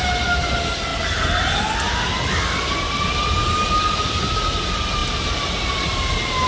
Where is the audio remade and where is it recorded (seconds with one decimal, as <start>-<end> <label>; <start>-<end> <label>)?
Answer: 0.0-6.5 recorded